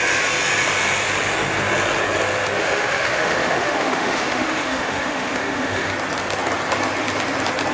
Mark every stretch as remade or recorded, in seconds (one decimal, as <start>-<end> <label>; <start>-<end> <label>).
0.0-2.6 recorded; 2.6-5.9 remade; 5.9-7.7 recorded